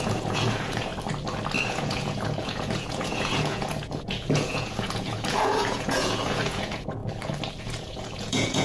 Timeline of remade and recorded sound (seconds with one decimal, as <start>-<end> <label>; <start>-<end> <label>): 0.0-0.9 remade; 0.9-1.6 recorded; 1.6-7.0 remade; 7.0-7.6 recorded; 7.6-8.6 remade